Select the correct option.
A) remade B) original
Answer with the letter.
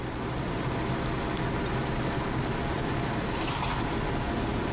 B